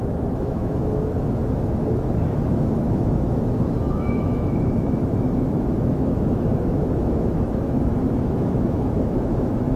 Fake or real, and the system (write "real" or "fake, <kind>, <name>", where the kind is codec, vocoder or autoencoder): fake, autoencoder, DAC-VAE